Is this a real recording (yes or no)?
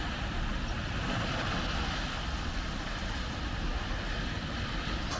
yes